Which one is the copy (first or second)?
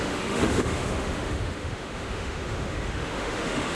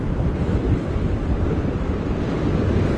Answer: first